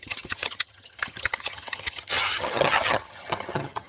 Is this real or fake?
fake